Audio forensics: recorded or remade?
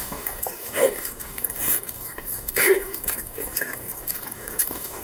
remade